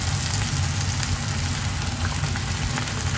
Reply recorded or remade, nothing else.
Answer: recorded